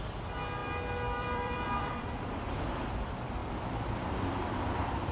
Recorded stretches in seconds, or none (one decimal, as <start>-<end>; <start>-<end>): 0.0-0.6; 2.4-3.4